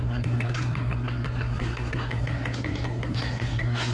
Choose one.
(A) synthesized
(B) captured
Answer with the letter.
A